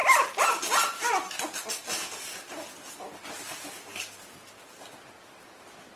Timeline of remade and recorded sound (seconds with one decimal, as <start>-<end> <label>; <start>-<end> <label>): 0.0-6.0 recorded

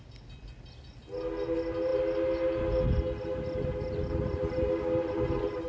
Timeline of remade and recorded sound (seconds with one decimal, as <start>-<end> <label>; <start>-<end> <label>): 0.0-5.7 recorded

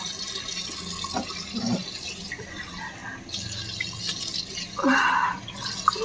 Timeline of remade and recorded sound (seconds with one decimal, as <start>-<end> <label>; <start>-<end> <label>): 0.0-6.0 recorded

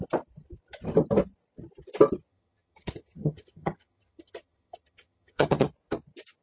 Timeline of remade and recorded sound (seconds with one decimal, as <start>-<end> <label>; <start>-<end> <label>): 0.0-2.3 recorded; 2.3-5.7 remade; 5.7-6.4 recorded

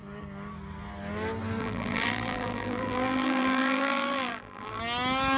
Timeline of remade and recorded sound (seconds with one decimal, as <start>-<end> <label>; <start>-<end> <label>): 0.0-1.6 recorded; 1.6-4.8 remade; 4.8-5.4 recorded

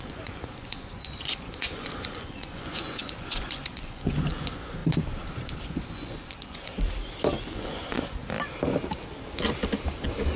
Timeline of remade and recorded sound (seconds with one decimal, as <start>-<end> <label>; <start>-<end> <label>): 0.0-4.8 remade; 4.8-5.6 recorded; 5.6-6.7 remade; 6.7-7.4 recorded; 7.4-8.2 remade; 8.2-10.4 recorded

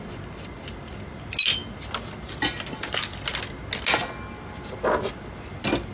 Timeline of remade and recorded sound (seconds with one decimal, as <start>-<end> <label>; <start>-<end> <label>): 0.0-5.9 recorded

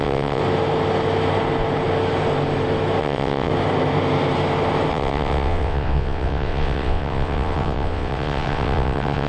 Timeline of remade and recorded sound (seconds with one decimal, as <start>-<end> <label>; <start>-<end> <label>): 0.0-0.4 remade; 0.4-3.0 recorded; 3.0-3.5 remade; 3.5-4.9 recorded; 4.9-9.3 remade